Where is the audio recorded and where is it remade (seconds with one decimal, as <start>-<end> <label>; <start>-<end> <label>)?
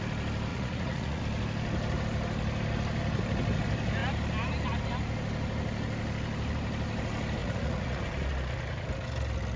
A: 0.0-0.5 recorded; 0.5-1.2 remade; 1.2-7.4 recorded; 7.4-8.0 remade; 8.0-9.6 recorded